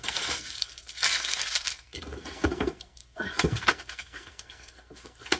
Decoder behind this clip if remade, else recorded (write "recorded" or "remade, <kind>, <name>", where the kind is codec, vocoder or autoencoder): remade, codec, SNAC